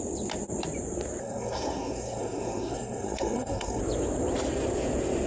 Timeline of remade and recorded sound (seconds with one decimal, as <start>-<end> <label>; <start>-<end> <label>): 0.0-1.2 recorded; 1.2-3.8 remade; 3.8-5.3 recorded